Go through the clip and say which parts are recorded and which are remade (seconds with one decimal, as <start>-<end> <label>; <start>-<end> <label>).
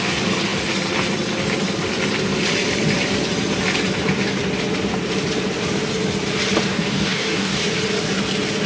0.0-6.7 recorded; 6.7-7.7 remade; 7.7-8.7 recorded